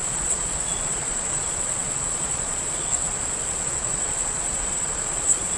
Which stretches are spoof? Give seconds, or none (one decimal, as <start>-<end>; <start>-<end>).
0.0-5.6